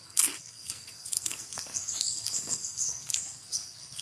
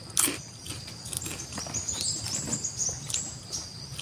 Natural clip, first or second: second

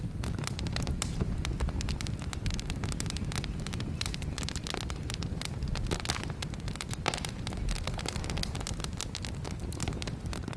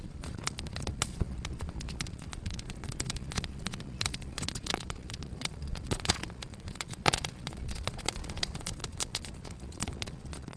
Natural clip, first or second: first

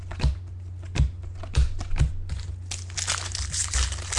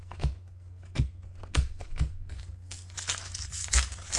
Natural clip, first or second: first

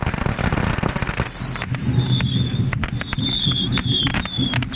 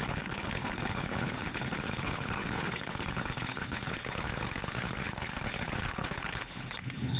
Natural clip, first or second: first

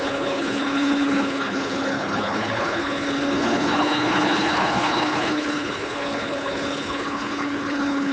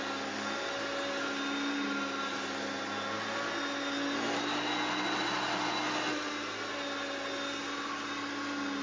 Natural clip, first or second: second